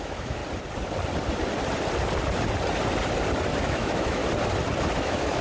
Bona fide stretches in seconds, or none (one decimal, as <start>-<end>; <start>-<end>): 0.4-3.6; 4.2-5.0